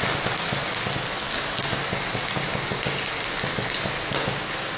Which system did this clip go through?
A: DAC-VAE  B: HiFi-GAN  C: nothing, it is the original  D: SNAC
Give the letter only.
C